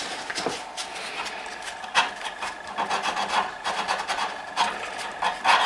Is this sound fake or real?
real